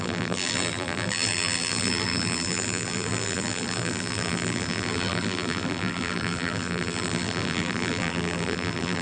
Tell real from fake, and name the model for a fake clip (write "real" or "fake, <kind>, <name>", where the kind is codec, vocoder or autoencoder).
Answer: fake, vocoder, BigVGAN v2